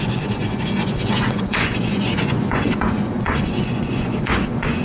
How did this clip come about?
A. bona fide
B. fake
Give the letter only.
B